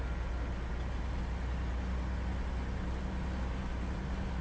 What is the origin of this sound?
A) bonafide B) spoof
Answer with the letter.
A